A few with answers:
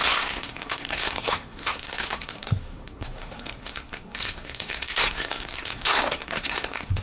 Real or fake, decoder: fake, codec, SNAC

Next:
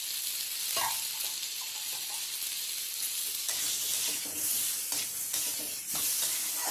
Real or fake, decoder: real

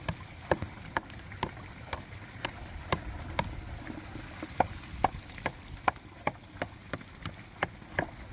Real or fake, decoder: real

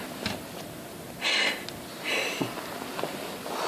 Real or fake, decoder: real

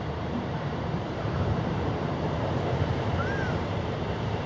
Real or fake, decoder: fake, vocoder, BigVGAN v2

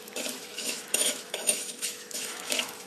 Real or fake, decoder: fake, autoencoder, DAC-VAE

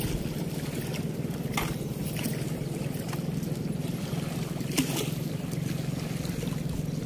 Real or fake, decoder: real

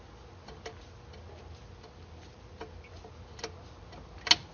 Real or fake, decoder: real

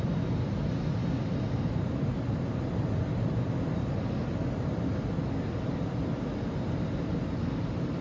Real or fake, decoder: real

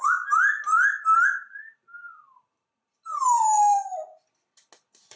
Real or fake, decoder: real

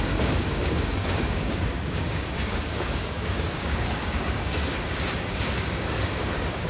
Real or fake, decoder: fake, codec, DAC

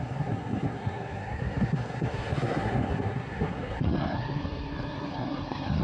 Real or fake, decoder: fake, codec, SNAC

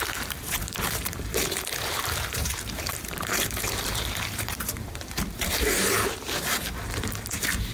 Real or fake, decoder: fake, vocoder, BigVGAN v2